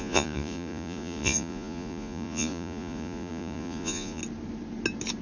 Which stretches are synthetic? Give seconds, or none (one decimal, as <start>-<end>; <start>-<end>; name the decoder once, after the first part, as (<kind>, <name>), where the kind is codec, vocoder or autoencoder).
0.0-4.2 (vocoder, Vocos)